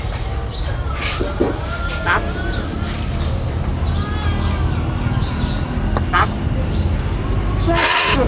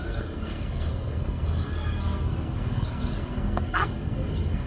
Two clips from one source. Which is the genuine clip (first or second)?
first